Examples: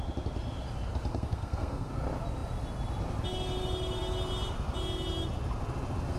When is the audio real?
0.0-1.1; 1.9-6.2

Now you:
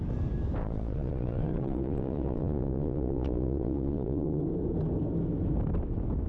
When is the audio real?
0.0-0.6; 4.4-6.3

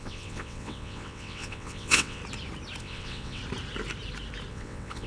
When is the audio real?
2.2-2.8; 3.4-4.5

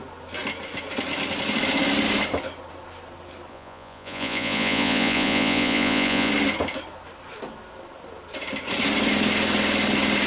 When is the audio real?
0.0-3.5; 6.3-10.3

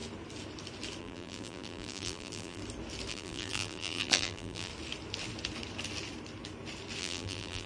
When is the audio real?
0.0-1.0; 2.6-3.1; 4.7-7.0

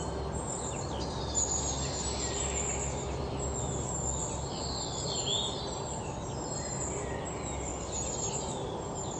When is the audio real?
0.0-9.2

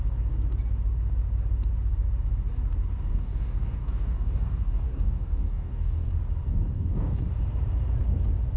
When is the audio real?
0.0-3.1; 6.1-6.5; 7.3-8.6